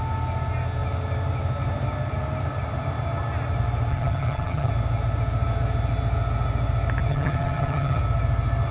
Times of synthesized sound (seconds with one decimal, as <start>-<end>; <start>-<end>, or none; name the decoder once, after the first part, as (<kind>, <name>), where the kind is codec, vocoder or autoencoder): 3.9-4.7 (vocoder, HiFi-GAN); 7.1-8.0